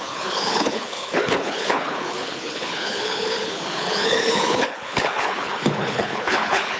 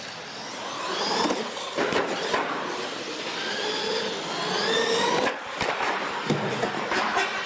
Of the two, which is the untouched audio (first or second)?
second